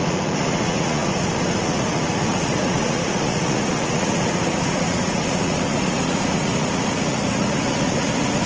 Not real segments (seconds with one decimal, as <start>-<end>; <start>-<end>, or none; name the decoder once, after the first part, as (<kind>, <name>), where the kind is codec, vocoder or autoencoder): 0.0-8.5 (vocoder, Vocos)